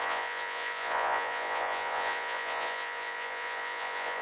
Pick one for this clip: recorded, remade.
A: remade